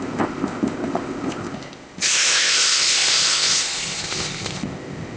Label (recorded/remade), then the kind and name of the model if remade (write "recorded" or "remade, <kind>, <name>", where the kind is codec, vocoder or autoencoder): remade, codec, ZipCodec